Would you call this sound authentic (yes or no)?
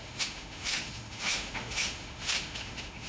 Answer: no